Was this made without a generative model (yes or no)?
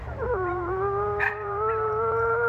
no